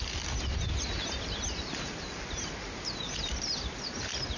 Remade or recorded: remade